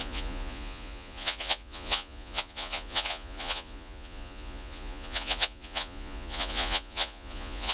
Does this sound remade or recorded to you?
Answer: remade